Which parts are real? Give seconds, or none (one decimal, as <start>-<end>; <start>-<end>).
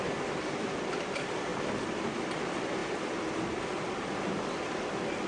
0.0-1.5; 2.1-5.3